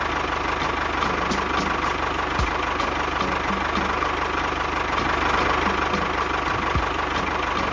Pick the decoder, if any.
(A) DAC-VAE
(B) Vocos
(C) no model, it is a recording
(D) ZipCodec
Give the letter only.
C